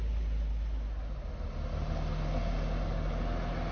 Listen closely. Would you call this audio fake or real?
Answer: real